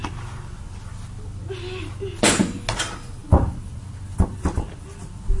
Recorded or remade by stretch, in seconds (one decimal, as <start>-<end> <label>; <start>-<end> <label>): 0.0-5.4 recorded